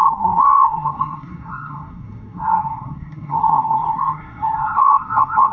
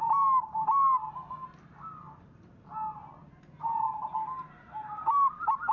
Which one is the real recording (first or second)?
second